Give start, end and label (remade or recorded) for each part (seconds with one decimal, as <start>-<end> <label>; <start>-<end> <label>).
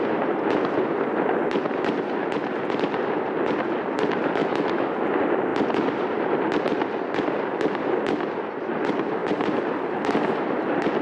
0.0-4.4 recorded; 4.4-4.9 remade; 4.9-11.0 recorded